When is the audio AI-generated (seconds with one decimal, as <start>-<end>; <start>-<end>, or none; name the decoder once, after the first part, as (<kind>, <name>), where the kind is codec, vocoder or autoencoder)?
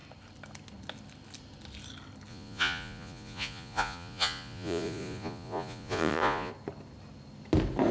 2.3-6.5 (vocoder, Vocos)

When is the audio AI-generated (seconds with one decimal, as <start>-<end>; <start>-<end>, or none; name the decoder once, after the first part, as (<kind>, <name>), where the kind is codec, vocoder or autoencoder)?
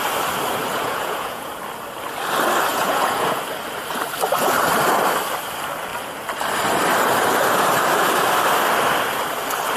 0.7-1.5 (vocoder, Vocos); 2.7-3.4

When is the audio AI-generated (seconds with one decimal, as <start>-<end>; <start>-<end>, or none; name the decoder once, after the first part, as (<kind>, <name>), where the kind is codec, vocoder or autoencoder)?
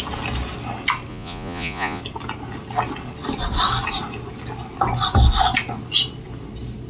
1.1-2.0 (vocoder, Vocos)